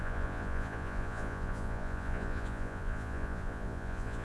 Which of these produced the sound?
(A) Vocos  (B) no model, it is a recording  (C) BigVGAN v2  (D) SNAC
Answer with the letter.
A